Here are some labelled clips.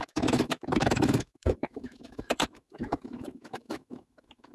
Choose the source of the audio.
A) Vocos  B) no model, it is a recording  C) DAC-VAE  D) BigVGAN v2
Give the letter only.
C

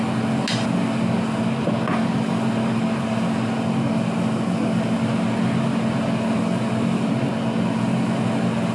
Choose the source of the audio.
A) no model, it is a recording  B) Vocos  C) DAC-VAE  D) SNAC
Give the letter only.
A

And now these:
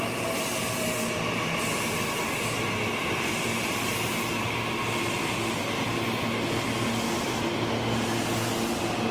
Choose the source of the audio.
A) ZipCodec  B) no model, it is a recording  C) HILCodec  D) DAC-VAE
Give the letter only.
B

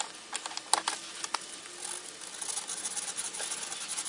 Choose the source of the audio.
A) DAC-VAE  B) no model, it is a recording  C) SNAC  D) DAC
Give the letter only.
B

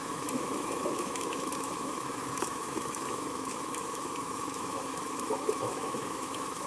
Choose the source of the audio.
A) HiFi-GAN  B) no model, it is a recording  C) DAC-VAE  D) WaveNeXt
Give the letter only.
C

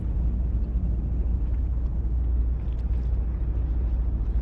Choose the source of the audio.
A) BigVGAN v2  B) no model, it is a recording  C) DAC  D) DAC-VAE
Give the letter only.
B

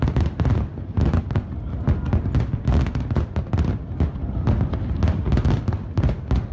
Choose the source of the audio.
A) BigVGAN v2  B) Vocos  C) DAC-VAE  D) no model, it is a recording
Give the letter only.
D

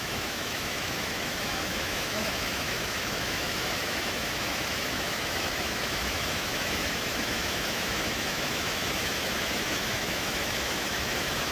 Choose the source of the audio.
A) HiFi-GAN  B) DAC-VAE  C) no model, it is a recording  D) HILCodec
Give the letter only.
B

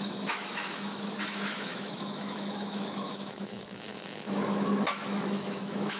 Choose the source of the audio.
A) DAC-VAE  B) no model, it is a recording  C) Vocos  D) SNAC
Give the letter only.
A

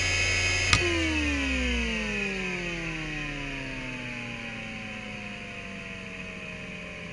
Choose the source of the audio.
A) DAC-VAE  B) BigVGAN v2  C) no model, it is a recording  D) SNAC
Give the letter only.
C